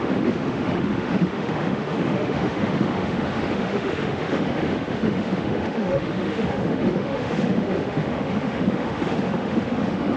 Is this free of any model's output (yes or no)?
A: no